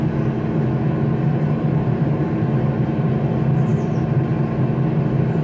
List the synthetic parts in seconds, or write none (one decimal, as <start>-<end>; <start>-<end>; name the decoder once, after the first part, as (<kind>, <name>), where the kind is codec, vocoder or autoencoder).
1.3-3.1 (vocoder, BigVGAN v2); 3.7-4.3